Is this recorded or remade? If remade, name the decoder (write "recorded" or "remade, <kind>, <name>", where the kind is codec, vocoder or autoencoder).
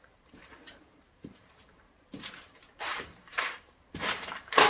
remade, vocoder, BigVGAN v2